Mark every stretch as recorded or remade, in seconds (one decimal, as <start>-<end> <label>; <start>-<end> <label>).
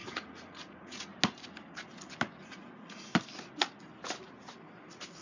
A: 0.0-1.1 remade; 1.1-2.4 recorded; 2.4-3.1 remade; 3.1-5.2 recorded